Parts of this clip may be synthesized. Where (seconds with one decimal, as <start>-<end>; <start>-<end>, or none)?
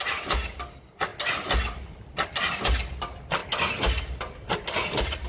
none